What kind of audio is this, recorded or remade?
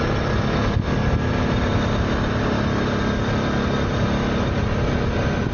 recorded